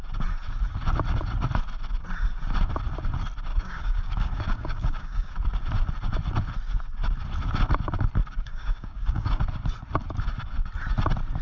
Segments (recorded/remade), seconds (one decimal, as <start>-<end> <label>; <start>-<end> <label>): 0.0-3.5 recorded; 3.5-5.3 remade; 5.3-8.2 recorded; 8.2-9.4 remade; 9.4-11.4 recorded